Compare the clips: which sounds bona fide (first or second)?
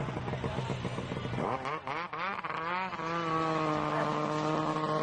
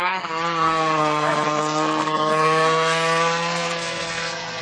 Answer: first